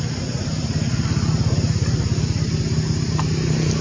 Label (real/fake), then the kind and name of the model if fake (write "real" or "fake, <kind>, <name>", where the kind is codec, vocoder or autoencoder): real